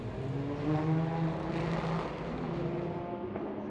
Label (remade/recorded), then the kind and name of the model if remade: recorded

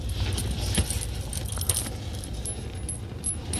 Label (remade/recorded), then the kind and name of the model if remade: recorded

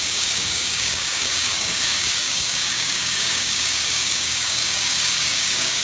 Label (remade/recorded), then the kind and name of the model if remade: remade, codec, DAC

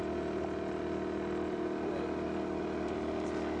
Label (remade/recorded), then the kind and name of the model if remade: recorded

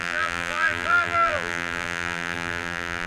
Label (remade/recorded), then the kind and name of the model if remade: remade, vocoder, BigVGAN v2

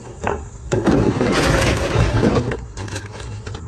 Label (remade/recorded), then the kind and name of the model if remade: remade, codec, SNAC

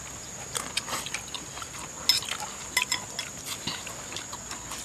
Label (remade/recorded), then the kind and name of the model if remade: recorded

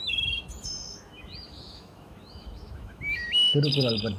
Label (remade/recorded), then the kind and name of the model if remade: remade, autoencoder, DAC-VAE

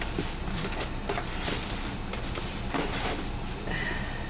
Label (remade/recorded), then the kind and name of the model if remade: recorded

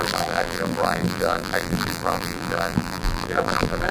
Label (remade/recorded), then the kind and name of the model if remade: remade, vocoder, BigVGAN v2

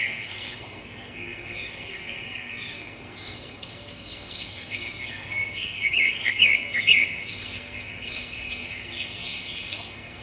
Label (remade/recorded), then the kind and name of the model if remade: remade, codec, SNAC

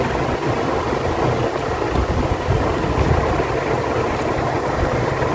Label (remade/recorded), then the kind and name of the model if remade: recorded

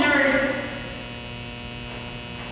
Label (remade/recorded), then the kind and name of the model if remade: recorded